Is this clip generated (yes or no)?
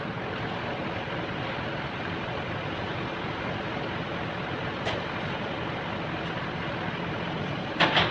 no